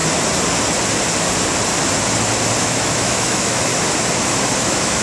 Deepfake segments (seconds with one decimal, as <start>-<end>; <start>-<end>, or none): 2.6-3.7; 4.6-5.0